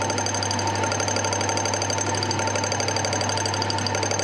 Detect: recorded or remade recorded